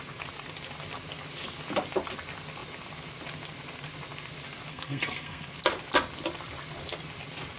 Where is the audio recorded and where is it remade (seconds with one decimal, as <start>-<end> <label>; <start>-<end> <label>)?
0.0-4.7 recorded; 4.7-5.5 remade; 5.5-7.6 recorded